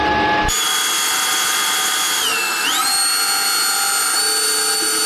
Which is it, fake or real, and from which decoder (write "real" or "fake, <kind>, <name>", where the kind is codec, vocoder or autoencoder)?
real